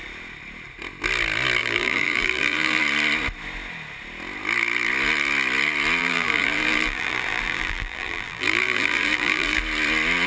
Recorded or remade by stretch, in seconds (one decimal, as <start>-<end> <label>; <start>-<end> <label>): 0.0-1.6 recorded; 1.6-2.8 remade; 2.8-6.0 recorded; 6.0-9.6 remade; 9.6-10.3 recorded